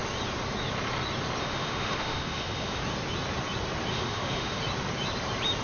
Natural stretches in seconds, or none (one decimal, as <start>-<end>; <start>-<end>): 0.0-1.4; 2.8-3.9; 4.6-5.6